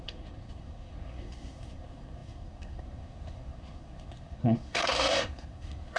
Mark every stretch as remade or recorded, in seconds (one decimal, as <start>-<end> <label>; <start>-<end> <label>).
0.0-6.0 remade